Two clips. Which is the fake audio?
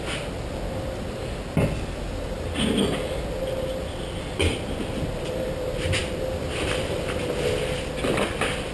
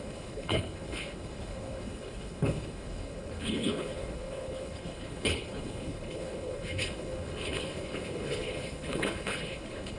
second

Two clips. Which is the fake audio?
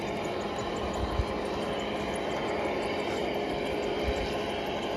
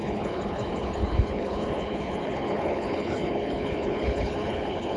second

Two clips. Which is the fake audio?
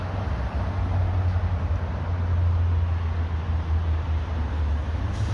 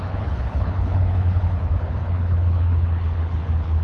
second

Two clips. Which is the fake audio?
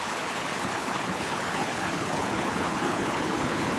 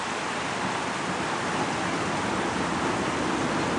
first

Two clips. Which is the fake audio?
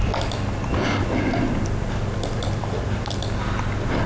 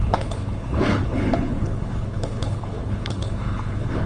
second